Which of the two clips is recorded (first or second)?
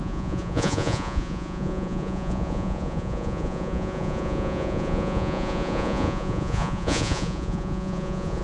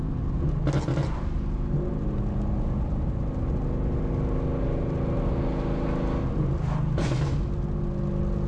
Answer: second